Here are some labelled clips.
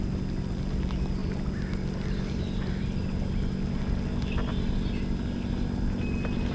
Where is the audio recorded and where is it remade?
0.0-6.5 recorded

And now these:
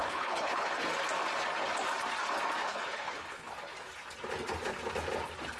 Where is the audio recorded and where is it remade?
0.0-0.7 remade; 0.7-2.6 recorded; 2.6-3.5 remade; 3.5-5.6 recorded

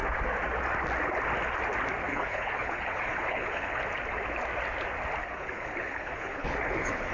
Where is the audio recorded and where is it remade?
0.0-2.1 recorded; 2.1-3.8 remade; 3.8-5.2 recorded; 5.2-7.1 remade

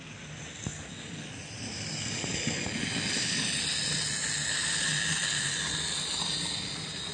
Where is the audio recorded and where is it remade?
0.0-7.1 recorded

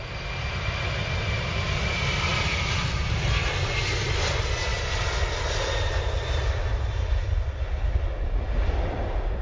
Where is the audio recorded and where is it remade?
0.0-9.4 recorded

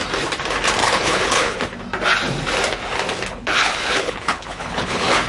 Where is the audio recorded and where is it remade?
0.0-0.8 recorded; 0.8-1.6 remade; 1.6-3.3 recorded; 3.3-5.3 remade

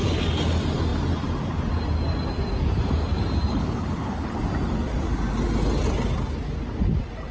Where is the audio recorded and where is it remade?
0.0-3.5 recorded; 3.5-4.4 remade; 4.4-7.3 recorded

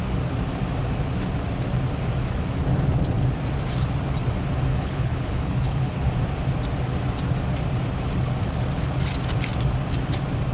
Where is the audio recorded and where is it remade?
0.0-4.7 recorded; 4.7-6.1 remade; 6.1-10.5 recorded